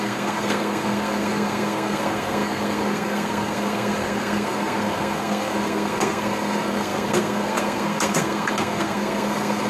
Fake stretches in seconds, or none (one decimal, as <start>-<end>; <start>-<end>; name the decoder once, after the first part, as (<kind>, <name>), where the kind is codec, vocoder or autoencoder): 0.0-9.7 (codec, SNAC)